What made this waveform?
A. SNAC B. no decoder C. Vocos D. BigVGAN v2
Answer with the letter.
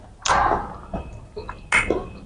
B